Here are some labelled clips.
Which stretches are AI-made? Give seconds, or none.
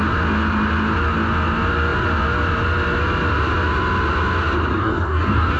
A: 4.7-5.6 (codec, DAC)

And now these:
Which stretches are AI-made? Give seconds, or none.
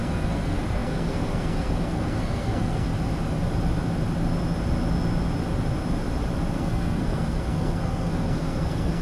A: 0.0-2.9 (codec, SNAC); 6.5-9.0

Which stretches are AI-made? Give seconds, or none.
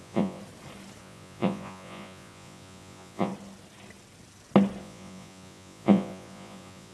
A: 0.0-0.4 (vocoder, Vocos); 1.0-3.3; 4.8-6.9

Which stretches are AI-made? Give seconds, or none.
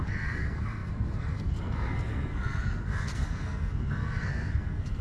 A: 0.0-5.0 (codec, SNAC)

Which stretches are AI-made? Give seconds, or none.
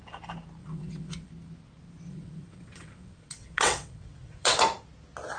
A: 0.6-1.3 (vocoder, WaveNeXt); 2.1-4.6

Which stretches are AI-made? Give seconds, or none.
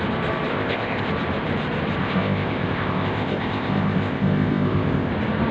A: 0.5-1.1 (codec, ZipCodec); 2.0-5.1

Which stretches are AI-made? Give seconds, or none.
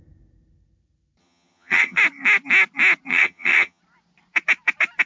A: 1.2-2.0 (vocoder, HiFi-GAN); 3.1-3.8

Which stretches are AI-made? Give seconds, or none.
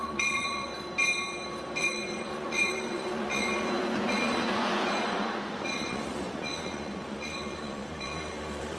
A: 0.0-0.7 (vocoder, Vocos); 1.8-8.8